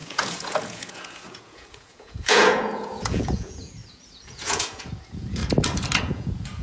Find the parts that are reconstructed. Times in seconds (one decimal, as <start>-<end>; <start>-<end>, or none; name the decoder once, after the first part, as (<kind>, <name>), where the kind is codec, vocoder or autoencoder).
0.0-5.4 (vocoder, Vocos); 6.0-6.6